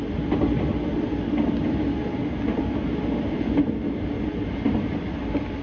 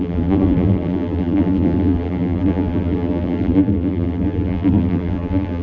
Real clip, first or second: first